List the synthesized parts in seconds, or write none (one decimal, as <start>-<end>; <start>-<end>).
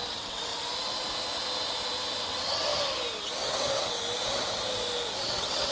0.0-0.5; 2.2-2.7; 3.5-4.0; 5.2-5.7